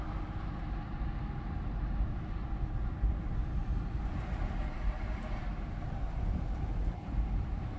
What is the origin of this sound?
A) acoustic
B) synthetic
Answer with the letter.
B